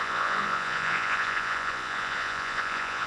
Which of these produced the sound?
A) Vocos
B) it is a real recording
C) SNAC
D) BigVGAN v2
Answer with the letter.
A